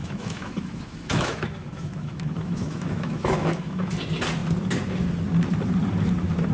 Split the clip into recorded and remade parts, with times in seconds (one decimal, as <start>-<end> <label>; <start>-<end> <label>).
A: 0.0-3.9 remade; 3.9-6.5 recorded